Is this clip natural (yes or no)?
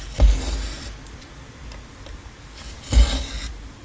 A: yes